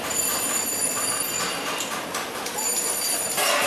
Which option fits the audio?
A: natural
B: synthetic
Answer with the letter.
B